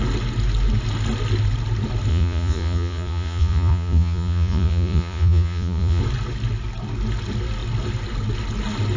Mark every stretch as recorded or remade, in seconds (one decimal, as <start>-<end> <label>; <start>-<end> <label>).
0.0-2.1 recorded; 2.1-6.0 remade; 6.0-9.0 recorded